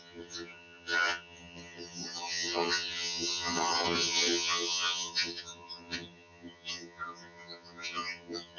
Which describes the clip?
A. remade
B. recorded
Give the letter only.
A